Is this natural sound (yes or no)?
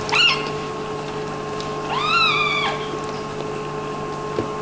yes